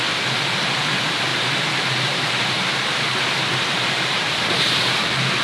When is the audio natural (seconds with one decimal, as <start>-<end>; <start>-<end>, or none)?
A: 0.0-5.4